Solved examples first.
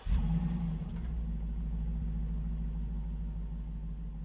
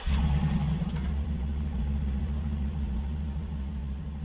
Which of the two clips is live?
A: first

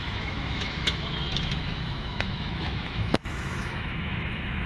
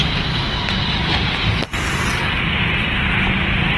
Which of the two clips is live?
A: second